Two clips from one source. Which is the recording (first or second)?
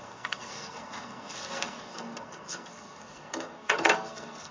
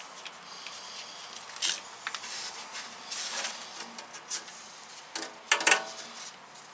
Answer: second